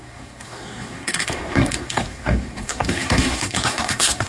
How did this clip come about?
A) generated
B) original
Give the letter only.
A